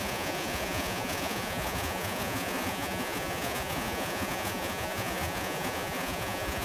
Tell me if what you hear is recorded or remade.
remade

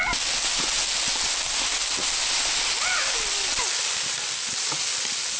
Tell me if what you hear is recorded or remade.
recorded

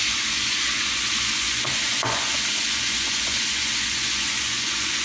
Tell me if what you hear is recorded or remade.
remade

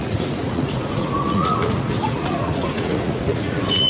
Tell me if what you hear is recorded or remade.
remade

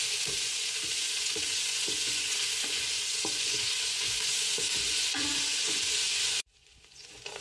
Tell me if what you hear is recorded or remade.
remade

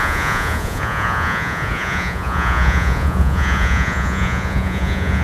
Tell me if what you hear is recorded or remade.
remade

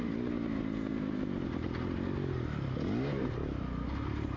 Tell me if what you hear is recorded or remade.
recorded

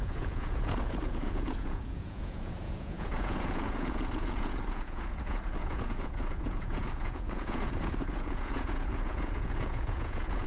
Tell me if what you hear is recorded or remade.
remade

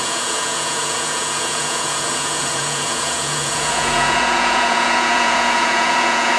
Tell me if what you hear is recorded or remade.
remade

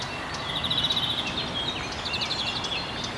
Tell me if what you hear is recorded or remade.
recorded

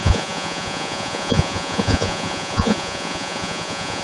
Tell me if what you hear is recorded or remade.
remade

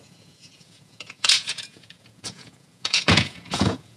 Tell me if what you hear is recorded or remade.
remade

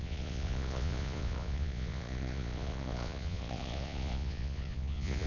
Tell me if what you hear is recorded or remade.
remade